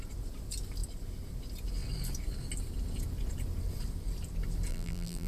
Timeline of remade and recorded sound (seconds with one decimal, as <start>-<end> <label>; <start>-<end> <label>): 0.0-4.7 recorded; 4.7-5.3 remade